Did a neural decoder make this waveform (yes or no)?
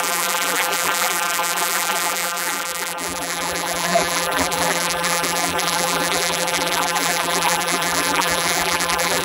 yes